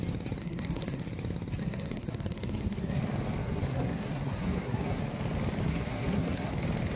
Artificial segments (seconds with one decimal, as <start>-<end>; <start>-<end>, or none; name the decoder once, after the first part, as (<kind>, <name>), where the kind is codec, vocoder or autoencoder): 0.4-1.0 (codec, SNAC); 1.6-3.0; 3.4-5.0; 5.7-6.5